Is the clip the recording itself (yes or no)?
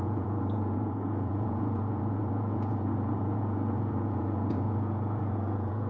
no